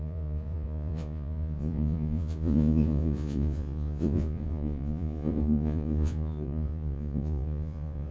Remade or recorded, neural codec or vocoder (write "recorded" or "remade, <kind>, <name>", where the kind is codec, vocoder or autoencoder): remade, vocoder, Vocos